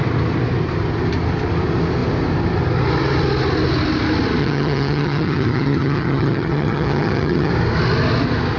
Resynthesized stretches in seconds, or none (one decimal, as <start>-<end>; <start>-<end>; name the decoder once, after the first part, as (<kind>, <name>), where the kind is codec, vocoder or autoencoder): 4.4-7.5 (vocoder, HiFi-GAN)